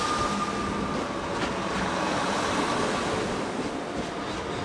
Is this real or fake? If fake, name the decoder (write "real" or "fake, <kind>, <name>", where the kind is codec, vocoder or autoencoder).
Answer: real